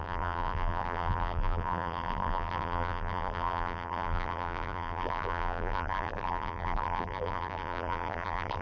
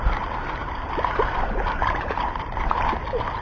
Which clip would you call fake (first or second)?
first